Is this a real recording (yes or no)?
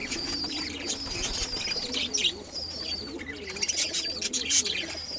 yes